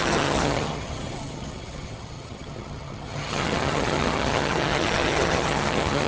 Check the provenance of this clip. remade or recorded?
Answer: remade